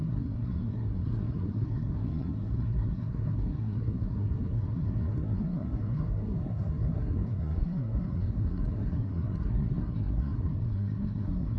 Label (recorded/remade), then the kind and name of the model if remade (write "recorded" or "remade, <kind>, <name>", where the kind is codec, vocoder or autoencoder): remade, codec, SNAC